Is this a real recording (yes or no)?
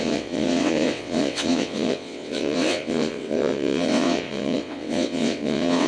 no